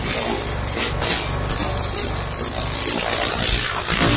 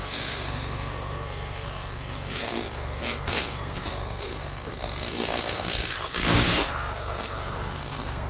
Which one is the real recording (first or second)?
first